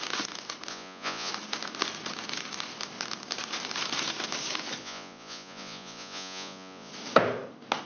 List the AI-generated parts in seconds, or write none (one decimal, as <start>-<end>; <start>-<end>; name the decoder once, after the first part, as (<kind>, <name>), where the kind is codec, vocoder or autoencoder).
0.7-1.3 (vocoder, Vocos); 4.8-6.9